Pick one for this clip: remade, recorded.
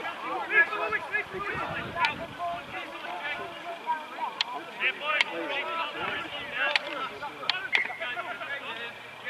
recorded